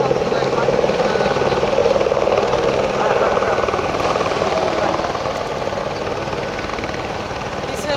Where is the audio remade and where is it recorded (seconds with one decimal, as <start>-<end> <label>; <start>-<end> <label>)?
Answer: 0.0-1.8 recorded; 1.8-5.8 remade; 5.8-6.7 recorded; 6.7-7.5 remade; 7.5-8.0 recorded